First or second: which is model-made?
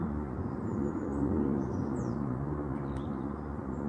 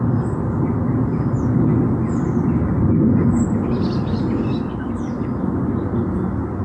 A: first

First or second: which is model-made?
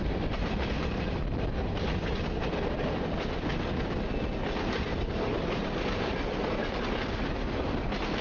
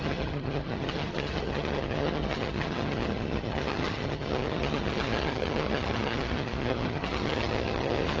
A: second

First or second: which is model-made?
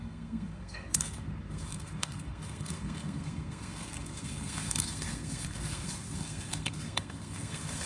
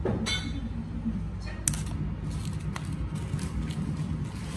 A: first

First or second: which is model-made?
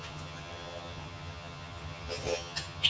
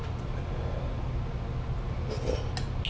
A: first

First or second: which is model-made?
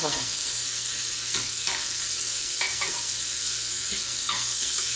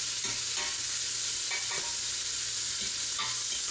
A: first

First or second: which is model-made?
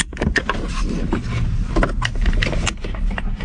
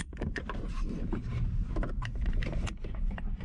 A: second